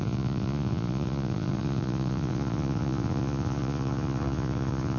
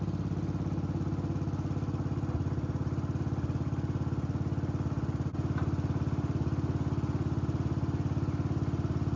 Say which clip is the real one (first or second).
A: second